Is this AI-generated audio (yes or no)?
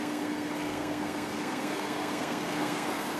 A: yes